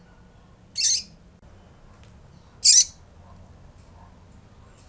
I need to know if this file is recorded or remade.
recorded